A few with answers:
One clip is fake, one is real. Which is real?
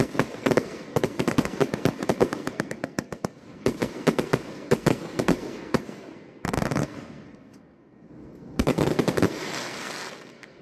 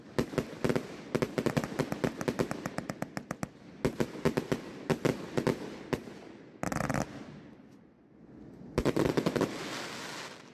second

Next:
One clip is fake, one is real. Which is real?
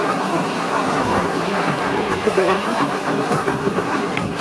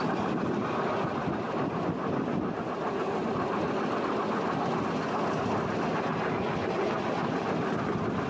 second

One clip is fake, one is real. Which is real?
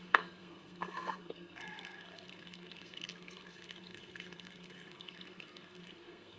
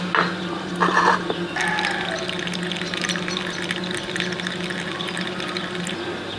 second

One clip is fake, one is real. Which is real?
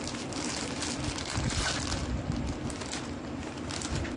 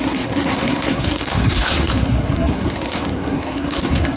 first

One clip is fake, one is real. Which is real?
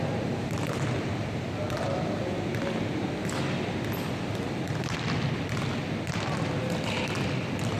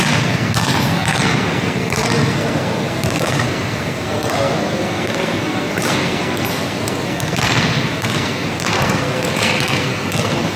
first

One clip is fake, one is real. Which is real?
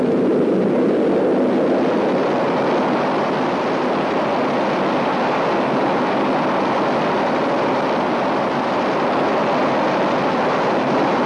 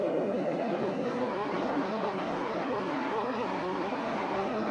first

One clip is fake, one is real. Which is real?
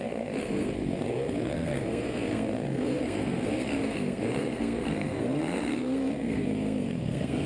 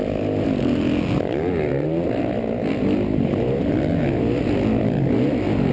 second